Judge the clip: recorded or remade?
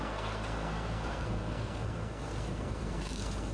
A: remade